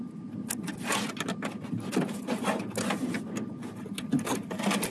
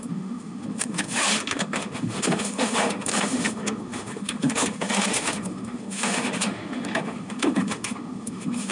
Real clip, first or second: first